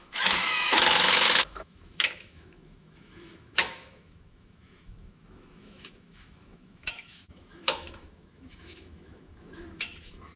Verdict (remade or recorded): remade